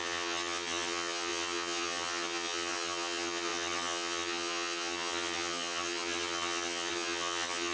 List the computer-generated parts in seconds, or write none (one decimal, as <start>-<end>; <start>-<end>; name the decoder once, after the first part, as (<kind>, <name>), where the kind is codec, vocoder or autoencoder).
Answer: 0.0-7.7 (vocoder, HiFi-GAN)